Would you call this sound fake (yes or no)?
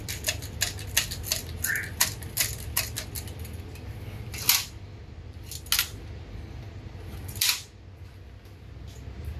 no